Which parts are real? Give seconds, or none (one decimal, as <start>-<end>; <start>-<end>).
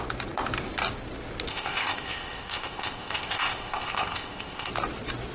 0.0-1.5; 4.7-5.3